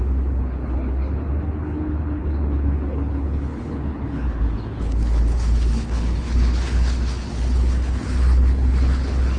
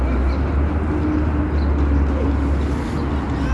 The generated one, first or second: first